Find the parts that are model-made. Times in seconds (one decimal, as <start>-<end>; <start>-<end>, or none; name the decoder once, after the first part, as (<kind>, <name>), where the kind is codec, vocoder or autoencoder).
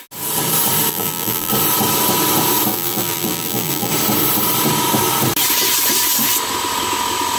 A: 0.9-1.5 (vocoder, BigVGAN v2); 2.7-3.9